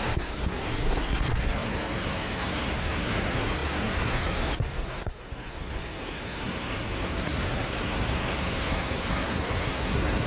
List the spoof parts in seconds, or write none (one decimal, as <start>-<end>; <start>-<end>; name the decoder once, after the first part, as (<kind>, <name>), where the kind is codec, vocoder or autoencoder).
0.0-10.3 (codec, SNAC)